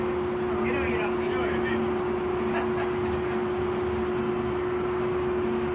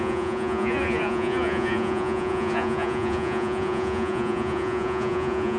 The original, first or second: first